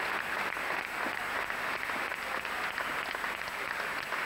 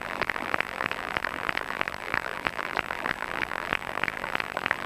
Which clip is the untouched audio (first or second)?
first